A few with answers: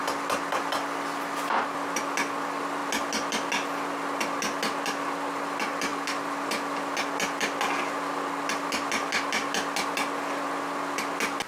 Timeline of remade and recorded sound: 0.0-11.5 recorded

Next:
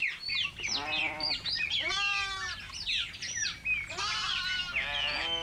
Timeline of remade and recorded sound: 0.0-5.4 recorded

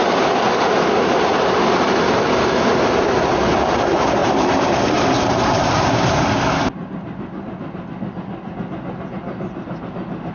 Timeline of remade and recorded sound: 0.0-4.2 recorded; 4.2-6.2 remade; 6.2-10.3 recorded

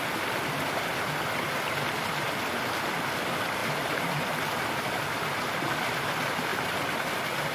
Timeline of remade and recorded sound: 0.0-0.9 remade; 0.9-2.9 recorded; 2.9-3.6 remade; 3.6-4.2 recorded; 4.2-6.5 remade; 6.5-7.5 recorded

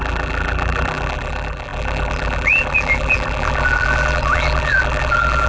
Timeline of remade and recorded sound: 0.0-5.5 remade

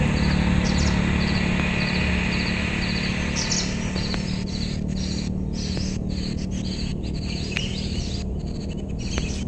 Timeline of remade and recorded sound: 0.0-9.5 recorded

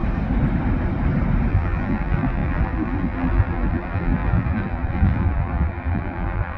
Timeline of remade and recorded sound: 0.0-1.5 recorded; 1.5-6.6 remade